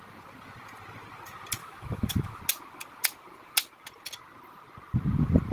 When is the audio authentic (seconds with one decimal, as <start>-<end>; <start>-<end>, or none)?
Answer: 0.0-1.6; 2.4-5.5